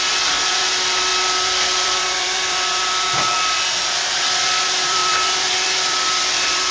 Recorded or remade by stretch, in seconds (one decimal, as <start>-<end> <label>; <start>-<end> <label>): 0.0-6.7 remade